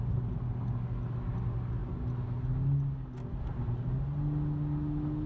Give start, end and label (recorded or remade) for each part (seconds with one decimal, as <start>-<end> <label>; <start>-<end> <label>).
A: 0.0-5.3 recorded